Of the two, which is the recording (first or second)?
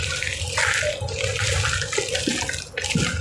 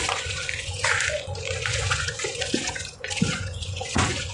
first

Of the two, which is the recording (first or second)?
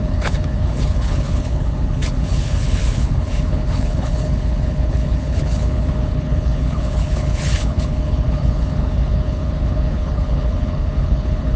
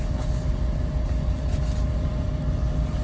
second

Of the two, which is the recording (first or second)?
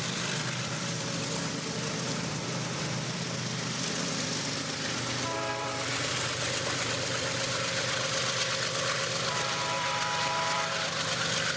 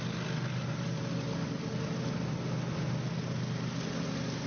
second